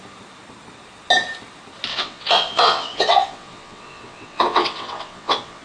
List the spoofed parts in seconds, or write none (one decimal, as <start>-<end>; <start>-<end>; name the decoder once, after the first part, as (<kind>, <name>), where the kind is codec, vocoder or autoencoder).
1.9-5.6 (vocoder, WaveNeXt)